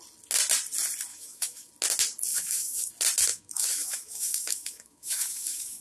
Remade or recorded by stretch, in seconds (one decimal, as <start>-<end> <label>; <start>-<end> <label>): 0.0-1.1 recorded; 1.1-1.7 remade; 1.7-2.3 recorded; 2.3-2.9 remade; 2.9-3.3 recorded; 3.3-5.8 remade